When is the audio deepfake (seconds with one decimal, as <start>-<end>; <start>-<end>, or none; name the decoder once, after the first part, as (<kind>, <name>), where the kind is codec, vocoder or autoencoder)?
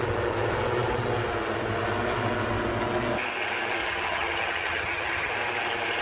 3.8-5.3 (vocoder, HiFi-GAN)